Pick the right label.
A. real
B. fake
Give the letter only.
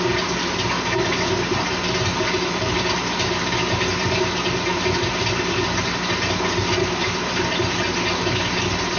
A